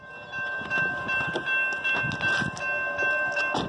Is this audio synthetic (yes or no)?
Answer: no